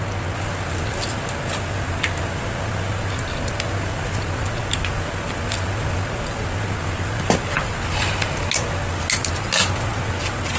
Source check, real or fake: real